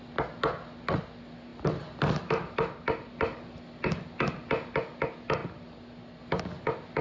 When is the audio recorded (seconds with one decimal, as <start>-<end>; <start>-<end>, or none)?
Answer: 0.0-7.0